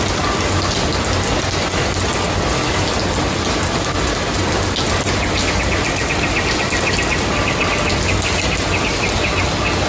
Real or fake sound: real